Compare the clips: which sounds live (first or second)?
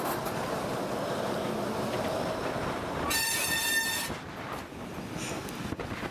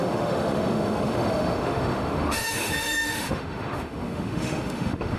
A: first